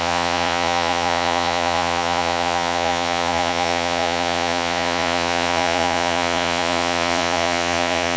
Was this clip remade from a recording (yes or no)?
yes